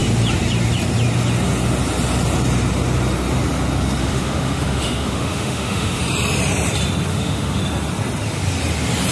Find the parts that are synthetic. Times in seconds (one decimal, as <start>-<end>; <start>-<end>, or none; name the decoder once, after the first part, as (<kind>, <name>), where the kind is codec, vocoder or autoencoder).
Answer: 4.0-6.0 (autoencoder, DAC-VAE); 7.1-7.6